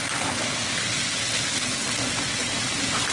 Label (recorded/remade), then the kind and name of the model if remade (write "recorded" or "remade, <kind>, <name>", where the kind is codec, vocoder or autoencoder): recorded